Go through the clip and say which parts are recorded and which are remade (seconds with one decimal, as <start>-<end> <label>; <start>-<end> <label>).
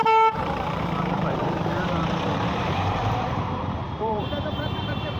0.0-1.4 remade; 1.4-2.3 recorded; 2.3-5.2 remade